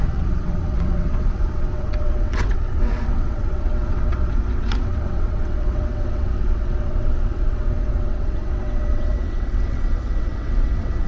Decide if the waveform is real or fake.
fake